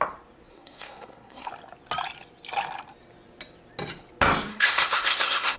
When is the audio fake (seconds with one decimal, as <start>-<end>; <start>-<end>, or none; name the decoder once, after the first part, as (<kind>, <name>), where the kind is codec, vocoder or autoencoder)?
0.5-1.5 (codec, SNAC); 4.5-5.6